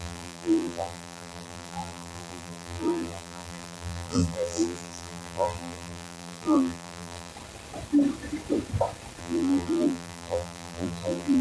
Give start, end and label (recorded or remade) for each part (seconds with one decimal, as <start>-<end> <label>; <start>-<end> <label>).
0.0-7.3 remade; 7.3-9.2 recorded; 9.2-11.4 remade